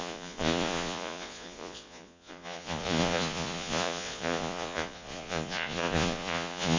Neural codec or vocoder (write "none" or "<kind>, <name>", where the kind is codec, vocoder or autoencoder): vocoder, Vocos